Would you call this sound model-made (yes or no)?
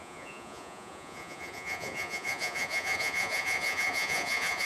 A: yes